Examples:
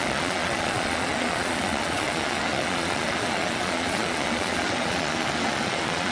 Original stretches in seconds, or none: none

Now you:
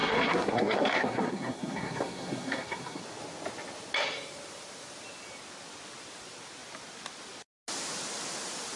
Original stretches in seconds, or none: 3.0-8.8

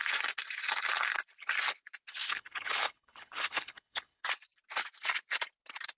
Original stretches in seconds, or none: 0.0-2.3; 4.2-6.0

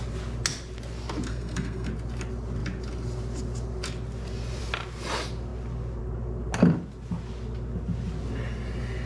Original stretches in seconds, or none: 0.0-1.3; 1.9-9.1

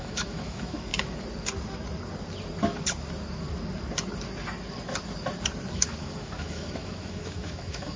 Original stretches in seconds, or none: 0.9-5.7

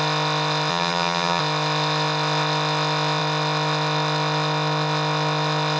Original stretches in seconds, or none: 0.0-0.7; 1.4-5.8

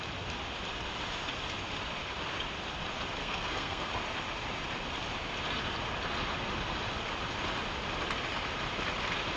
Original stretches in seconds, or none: 0.0-3.2; 3.9-9.4